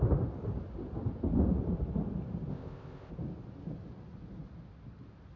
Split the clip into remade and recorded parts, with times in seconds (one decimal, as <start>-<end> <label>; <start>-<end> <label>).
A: 0.0-2.5 recorded; 2.5-3.1 remade; 3.1-5.4 recorded